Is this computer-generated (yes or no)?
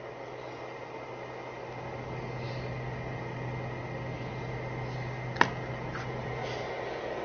no